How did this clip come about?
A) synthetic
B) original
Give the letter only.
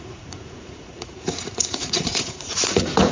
A